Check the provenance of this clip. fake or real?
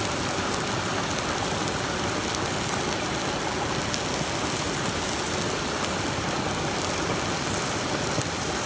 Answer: real